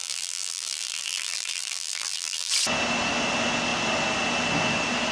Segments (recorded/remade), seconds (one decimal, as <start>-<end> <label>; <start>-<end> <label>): 0.0-2.5 remade; 2.5-5.1 recorded